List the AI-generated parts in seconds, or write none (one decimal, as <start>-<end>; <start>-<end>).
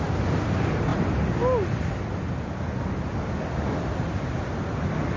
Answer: none